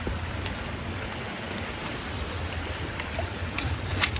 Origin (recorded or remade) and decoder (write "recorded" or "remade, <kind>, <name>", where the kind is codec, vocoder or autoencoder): recorded